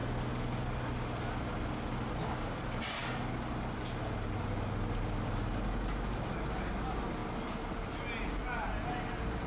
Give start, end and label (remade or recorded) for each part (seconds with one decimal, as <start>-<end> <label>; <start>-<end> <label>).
0.0-9.5 recorded